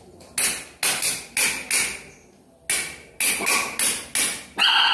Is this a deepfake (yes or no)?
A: no